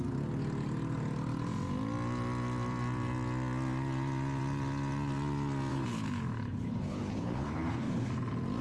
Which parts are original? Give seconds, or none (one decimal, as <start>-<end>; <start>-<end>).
0.0-5.7; 8.1-8.6

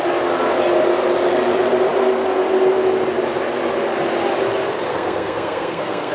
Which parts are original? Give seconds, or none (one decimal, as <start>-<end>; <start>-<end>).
0.0-4.9